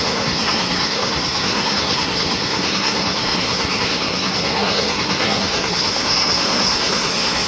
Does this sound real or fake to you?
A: fake